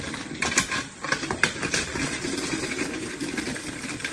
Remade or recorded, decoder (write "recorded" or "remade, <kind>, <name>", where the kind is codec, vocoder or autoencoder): recorded